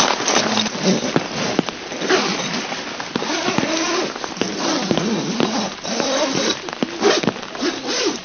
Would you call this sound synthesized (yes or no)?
no